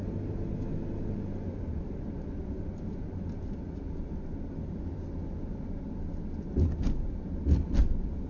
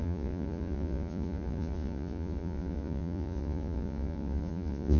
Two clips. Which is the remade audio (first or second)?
second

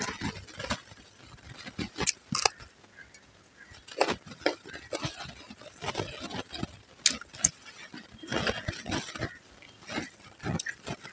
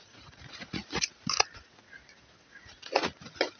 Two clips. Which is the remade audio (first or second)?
second